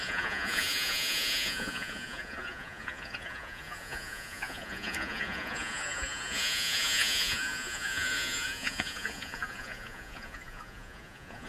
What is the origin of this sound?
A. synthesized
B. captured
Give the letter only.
A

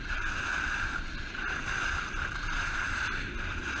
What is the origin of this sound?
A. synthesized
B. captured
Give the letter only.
B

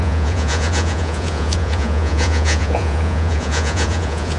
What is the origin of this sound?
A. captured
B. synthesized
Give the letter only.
B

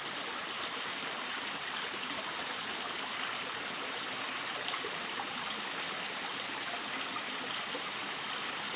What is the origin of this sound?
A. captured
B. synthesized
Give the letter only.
A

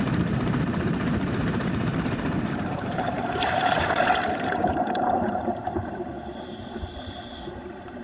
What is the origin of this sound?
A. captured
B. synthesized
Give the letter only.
B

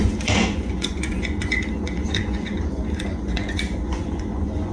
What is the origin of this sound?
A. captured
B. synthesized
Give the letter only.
B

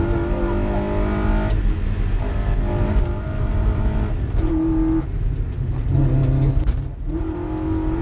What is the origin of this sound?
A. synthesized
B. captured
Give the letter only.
B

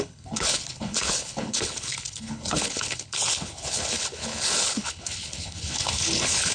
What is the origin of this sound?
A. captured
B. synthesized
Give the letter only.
B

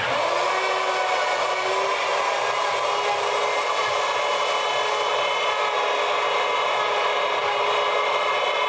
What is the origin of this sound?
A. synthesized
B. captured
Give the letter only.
B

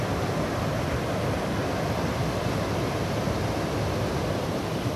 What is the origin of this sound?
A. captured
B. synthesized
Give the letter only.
A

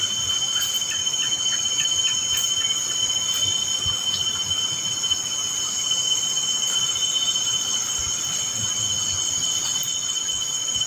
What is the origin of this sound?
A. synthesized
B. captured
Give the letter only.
B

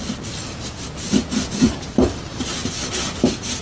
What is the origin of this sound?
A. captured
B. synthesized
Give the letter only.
A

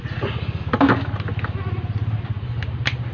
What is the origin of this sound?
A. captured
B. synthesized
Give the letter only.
A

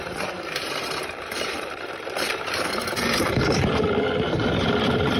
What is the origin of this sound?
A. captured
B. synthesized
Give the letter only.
B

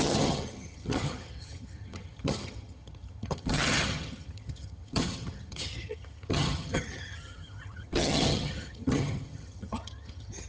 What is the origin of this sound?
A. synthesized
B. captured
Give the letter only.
A